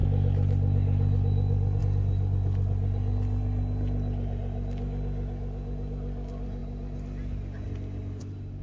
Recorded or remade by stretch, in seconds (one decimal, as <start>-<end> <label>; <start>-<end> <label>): 0.0-8.6 recorded

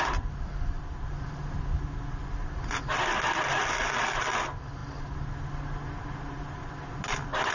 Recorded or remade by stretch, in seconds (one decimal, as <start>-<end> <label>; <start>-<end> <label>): 0.0-7.5 recorded

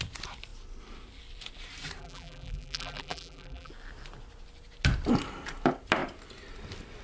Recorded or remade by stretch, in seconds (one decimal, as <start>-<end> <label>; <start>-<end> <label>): 0.0-2.0 recorded; 2.0-3.7 remade; 3.7-7.0 recorded

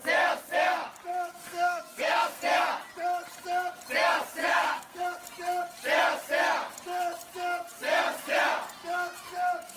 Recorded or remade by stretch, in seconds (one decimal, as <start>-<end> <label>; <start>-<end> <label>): 0.0-1.1 recorded; 1.1-2.4 remade; 2.4-4.4 recorded; 4.4-5.0 remade; 5.0-9.8 recorded

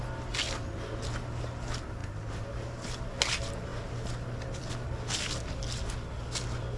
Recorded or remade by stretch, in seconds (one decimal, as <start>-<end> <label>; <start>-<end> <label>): 0.0-6.8 recorded